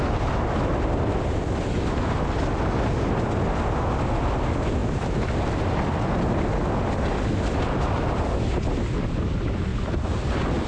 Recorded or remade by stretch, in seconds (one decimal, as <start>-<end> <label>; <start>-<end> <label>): 0.0-10.7 recorded

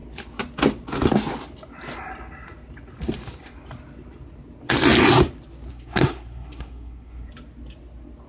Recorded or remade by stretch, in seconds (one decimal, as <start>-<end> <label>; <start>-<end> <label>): 0.0-5.7 recorded; 5.7-7.3 remade; 7.3-8.3 recorded

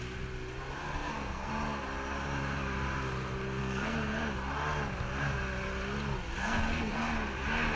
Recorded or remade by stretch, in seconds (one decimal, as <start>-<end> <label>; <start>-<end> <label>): 0.0-0.8 recorded; 0.8-1.5 remade; 1.5-3.6 recorded; 3.6-4.2 remade; 4.2-6.4 recorded; 6.4-7.0 remade; 7.0-7.8 recorded

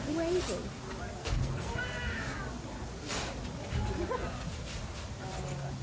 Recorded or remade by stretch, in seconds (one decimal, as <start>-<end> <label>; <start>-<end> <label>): 0.0-1.2 recorded; 1.2-1.8 remade; 1.8-5.8 recorded

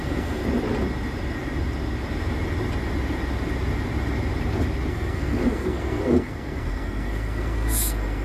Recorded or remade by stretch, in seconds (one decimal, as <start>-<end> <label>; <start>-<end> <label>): 0.0-0.4 remade; 0.4-4.9 recorded; 4.9-8.2 remade